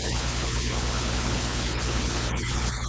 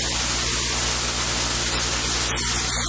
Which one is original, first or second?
second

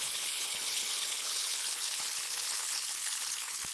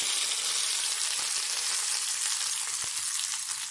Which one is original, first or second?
second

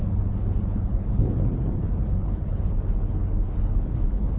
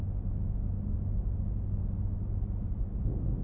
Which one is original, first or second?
second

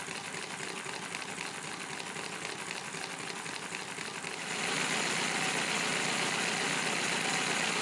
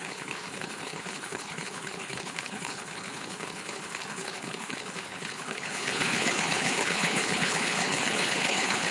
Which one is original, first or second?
first